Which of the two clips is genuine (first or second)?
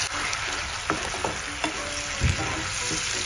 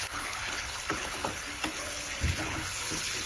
first